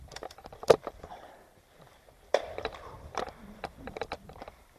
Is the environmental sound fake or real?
fake